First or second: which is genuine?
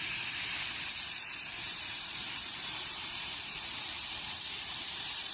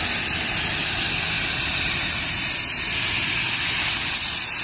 second